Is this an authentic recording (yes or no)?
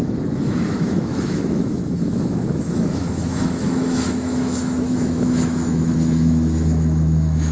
no